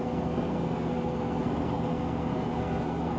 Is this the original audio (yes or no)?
no